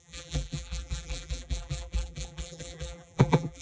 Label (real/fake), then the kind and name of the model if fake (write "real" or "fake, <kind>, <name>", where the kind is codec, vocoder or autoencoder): fake, vocoder, BigVGAN v2